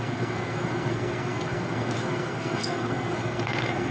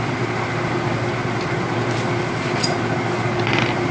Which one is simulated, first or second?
first